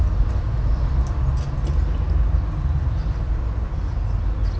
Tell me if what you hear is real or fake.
real